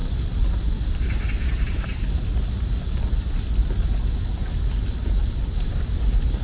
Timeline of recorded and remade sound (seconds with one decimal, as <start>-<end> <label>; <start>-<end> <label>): 0.0-6.4 recorded